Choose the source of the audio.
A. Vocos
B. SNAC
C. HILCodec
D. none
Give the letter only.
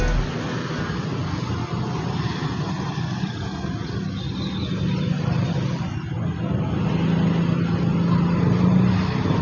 D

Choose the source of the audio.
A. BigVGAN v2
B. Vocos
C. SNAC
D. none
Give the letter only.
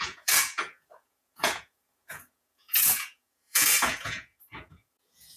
B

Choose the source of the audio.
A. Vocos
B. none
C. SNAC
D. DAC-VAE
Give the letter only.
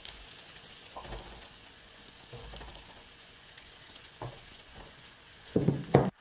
A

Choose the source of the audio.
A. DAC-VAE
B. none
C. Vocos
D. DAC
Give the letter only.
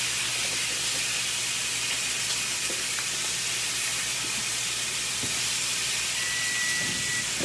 B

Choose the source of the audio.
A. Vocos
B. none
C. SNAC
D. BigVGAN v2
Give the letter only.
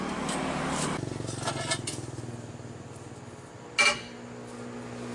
B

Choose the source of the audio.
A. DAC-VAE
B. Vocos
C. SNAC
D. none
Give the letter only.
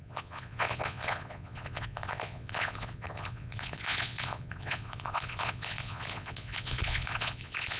B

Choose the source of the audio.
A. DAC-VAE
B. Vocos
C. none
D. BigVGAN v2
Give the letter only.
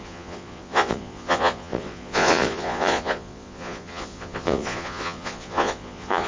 B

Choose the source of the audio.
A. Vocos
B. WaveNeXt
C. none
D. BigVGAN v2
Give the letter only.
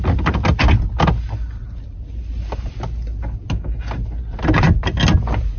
C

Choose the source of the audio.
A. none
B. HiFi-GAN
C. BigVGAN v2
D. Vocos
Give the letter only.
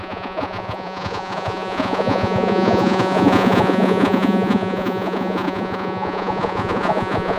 D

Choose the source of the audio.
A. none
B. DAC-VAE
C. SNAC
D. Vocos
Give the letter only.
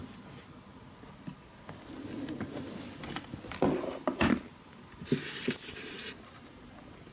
A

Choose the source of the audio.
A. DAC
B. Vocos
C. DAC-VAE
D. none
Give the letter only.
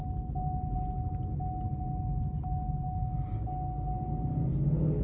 D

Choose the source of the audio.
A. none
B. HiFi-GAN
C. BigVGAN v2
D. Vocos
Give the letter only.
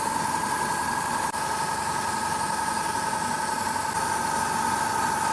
A